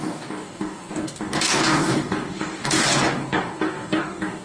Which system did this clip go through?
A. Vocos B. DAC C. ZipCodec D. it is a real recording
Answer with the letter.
B